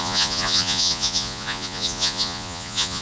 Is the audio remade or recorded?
remade